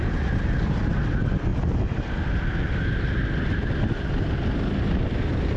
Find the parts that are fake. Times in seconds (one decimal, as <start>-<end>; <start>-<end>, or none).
none